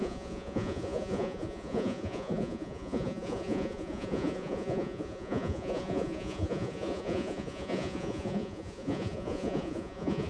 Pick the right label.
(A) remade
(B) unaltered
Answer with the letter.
A